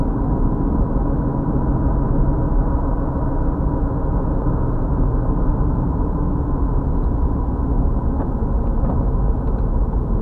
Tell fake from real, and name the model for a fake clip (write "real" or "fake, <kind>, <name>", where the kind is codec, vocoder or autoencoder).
real